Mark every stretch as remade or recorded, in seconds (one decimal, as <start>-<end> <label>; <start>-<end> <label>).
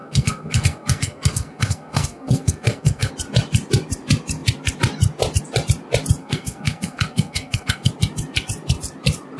0.0-3.1 remade; 3.1-6.2 recorded; 6.2-7.9 remade; 7.9-9.4 recorded